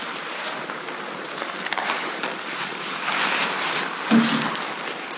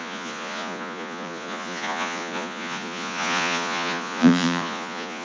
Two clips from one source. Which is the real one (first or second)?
first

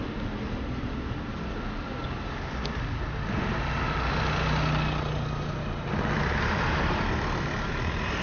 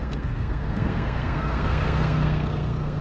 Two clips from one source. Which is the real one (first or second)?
first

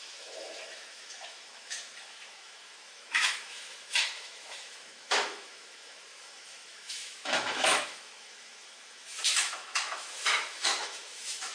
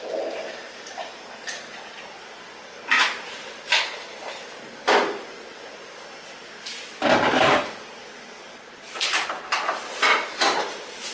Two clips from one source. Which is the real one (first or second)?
second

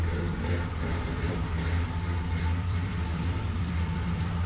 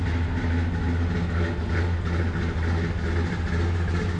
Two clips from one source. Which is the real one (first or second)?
second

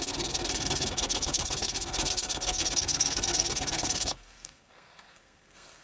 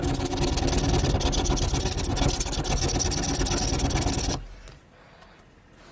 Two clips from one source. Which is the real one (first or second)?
second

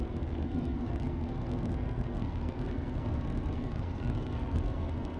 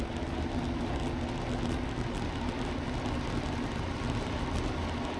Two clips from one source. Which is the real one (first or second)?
second